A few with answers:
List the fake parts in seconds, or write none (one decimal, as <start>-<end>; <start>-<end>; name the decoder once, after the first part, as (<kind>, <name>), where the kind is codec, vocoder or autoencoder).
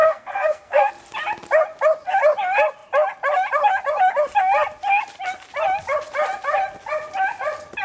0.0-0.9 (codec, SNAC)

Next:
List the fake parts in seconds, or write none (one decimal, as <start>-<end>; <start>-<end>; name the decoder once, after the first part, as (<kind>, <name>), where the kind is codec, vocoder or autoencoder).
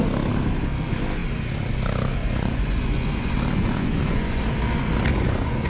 2.2-4.4 (vocoder, Vocos); 5.1-5.7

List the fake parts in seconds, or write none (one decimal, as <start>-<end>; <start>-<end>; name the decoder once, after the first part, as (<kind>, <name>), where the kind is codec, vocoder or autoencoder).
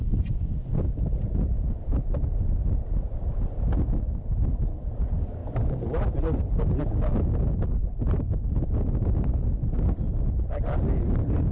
7.8-8.5 (vocoder, BigVGAN v2)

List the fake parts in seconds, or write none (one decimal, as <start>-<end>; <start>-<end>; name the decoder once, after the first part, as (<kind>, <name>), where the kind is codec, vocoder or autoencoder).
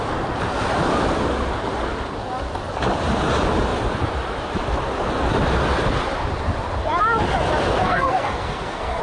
7.8-9.0 (codec, SNAC)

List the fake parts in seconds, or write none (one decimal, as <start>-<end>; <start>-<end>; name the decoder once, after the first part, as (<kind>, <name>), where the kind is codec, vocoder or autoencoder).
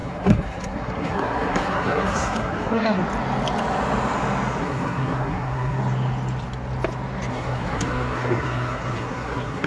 0.0-3.0 (codec, SNAC); 4.6-5.8; 7.3-9.7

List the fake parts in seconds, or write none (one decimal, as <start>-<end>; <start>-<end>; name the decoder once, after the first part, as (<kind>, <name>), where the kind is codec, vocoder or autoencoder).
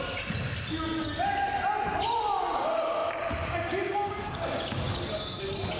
none